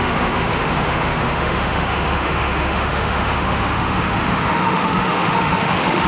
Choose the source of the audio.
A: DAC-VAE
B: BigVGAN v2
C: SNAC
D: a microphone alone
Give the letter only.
A